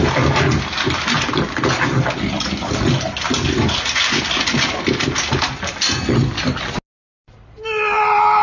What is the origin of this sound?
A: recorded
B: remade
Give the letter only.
A